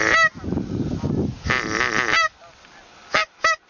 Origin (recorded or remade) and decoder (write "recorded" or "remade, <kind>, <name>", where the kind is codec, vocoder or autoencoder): recorded